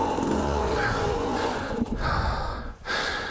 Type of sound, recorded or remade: remade